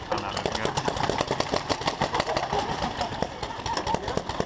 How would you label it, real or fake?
real